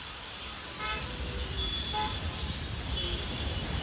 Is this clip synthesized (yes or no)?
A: no